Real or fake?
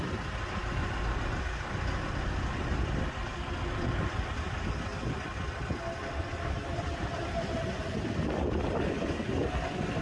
real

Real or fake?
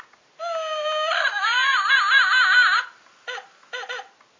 real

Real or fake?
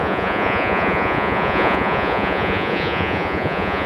fake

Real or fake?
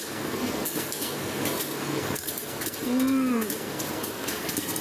fake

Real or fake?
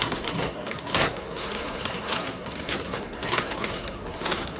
fake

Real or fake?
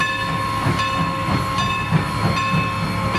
real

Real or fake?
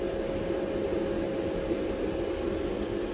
real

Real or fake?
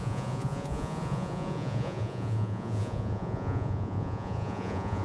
fake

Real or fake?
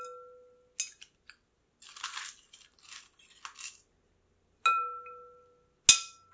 real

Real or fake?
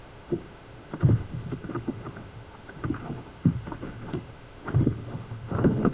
fake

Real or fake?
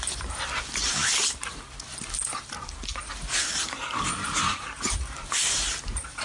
real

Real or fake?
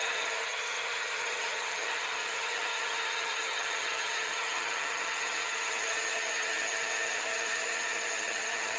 fake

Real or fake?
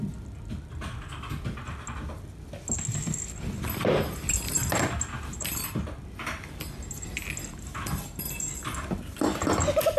real